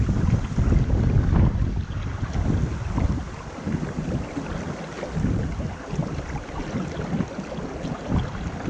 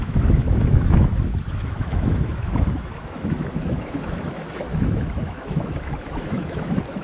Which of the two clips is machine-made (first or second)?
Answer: second